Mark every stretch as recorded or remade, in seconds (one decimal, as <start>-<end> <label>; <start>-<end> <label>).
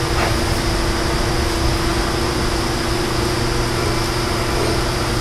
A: 0.0-5.2 recorded